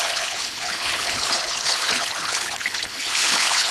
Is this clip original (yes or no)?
no